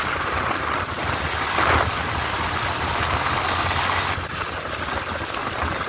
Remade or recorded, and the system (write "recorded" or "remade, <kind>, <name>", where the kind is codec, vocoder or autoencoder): recorded